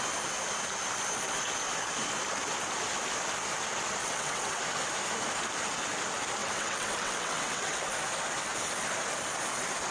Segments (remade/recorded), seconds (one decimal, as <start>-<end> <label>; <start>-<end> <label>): 0.0-4.0 recorded; 4.0-4.6 remade; 4.6-6.4 recorded; 6.4-7.8 remade; 7.8-9.9 recorded